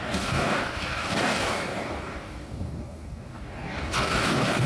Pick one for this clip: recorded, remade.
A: remade